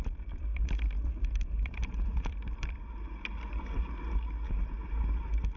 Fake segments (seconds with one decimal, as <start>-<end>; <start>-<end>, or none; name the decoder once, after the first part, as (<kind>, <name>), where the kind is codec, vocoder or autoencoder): 1.1-2.8 (vocoder, BigVGAN v2)